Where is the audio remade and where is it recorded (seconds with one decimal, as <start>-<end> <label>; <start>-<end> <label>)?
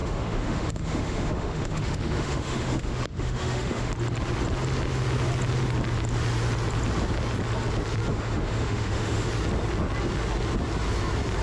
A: 0.0-3.9 remade; 3.9-8.1 recorded; 8.1-9.3 remade; 9.3-11.4 recorded